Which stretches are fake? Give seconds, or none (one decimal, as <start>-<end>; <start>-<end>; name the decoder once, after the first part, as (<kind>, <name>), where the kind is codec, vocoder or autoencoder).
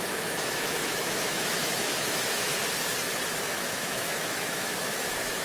0.0-2.5 (autoencoder, DAC-VAE); 3.4-5.4